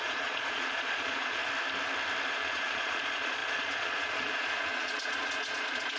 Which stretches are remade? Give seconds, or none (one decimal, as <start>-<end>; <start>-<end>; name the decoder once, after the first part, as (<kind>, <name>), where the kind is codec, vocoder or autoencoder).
0.0-1.4 (vocoder, Vocos); 2.3-6.0